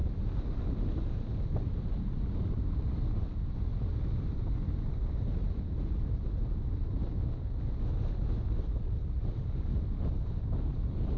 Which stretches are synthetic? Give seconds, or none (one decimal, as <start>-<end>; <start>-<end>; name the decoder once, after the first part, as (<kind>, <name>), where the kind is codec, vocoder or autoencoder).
none

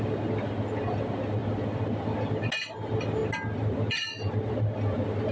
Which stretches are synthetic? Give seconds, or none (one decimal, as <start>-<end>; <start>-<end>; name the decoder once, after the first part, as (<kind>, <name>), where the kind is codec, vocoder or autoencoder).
none

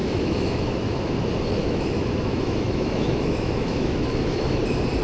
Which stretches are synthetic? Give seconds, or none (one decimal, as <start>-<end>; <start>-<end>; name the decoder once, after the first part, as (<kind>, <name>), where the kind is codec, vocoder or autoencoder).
0.0-1.1 (autoencoder, DAC-VAE); 1.6-4.6

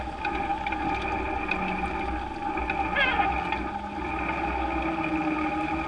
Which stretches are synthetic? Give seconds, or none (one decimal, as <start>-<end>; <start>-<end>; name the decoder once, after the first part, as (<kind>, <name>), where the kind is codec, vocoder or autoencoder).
none

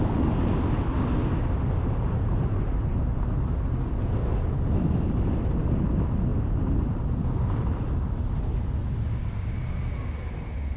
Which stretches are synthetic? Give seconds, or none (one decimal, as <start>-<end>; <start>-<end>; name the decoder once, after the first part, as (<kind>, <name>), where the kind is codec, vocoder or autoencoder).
none

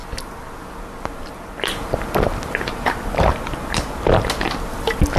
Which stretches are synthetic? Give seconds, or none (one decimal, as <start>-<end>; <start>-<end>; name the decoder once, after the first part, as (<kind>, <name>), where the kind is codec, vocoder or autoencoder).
2.7-3.3 (vocoder, BigVGAN v2)

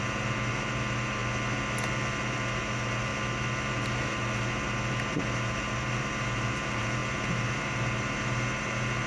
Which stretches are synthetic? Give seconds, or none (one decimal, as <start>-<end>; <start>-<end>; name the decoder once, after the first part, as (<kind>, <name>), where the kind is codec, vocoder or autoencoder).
0.0-1.2 (vocoder, BigVGAN v2); 2.2-3.1; 3.7-9.1